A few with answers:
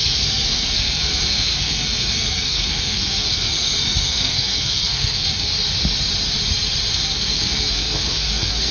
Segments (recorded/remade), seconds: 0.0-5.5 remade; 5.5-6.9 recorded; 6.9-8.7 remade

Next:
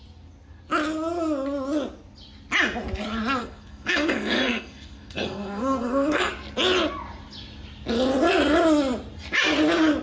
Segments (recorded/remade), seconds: 0.0-3.4 recorded; 3.4-6.3 remade; 6.3-10.0 recorded

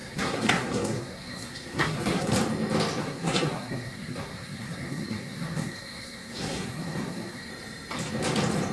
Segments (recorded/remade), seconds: 0.0-2.3 remade; 2.3-3.0 recorded; 3.0-7.5 remade; 7.5-8.7 recorded

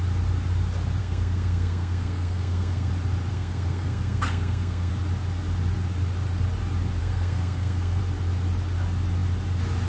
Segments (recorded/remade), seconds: 0.0-1.0 recorded; 1.0-2.9 remade; 2.9-3.3 recorded; 3.3-4.9 remade; 4.9-7.0 recorded; 7.0-8.0 remade; 8.0-9.9 recorded